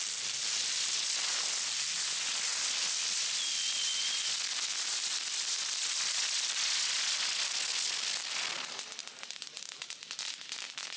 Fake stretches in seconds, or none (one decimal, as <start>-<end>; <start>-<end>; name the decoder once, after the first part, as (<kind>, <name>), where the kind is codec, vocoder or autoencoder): none